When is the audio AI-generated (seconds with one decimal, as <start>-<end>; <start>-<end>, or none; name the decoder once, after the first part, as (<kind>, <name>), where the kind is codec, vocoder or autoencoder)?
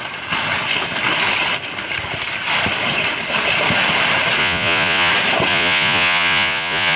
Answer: 4.4-5.1 (vocoder, Vocos); 5.5-7.0